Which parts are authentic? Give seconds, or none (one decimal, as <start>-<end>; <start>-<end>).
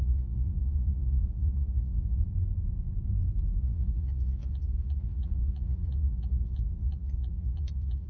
2.2-3.6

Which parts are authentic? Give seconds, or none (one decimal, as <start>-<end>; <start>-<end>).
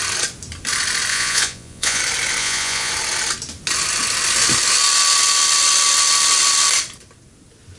0.0-1.1; 2.0-2.4; 2.9-7.8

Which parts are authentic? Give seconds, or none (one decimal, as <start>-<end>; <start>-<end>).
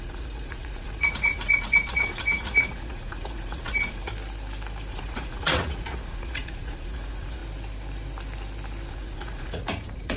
4.1-4.9; 7.4-8.9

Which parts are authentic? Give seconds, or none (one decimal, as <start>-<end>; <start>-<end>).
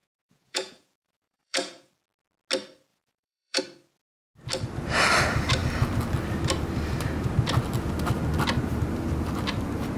1.9-2.9; 3.6-10.0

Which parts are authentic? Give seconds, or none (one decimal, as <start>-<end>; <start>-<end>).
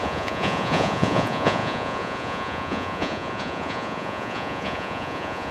none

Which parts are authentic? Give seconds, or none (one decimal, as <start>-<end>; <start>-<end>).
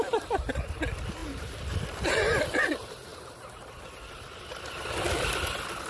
0.0-5.9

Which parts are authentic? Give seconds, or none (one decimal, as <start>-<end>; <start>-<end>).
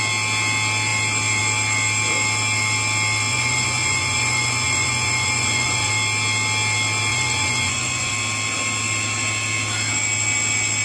0.0-3.3; 5.9-7.1; 8.1-10.8